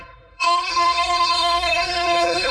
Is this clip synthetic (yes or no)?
yes